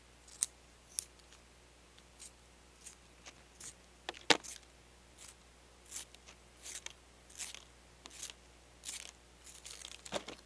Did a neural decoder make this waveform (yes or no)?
no